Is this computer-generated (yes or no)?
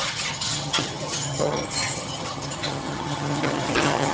yes